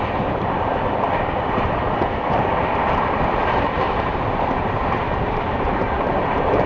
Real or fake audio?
fake